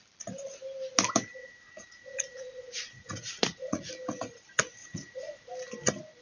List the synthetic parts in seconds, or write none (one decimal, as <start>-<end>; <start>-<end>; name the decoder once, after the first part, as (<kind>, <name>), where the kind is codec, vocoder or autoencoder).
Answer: 1.4-3.9 (vocoder, Vocos); 4.8-5.5